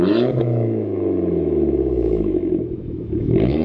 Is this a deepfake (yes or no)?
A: yes